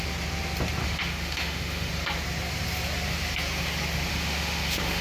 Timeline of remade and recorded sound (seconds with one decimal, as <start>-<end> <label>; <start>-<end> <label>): 0.0-0.8 recorded; 0.8-1.9 remade; 1.9-4.1 recorded; 4.1-5.0 remade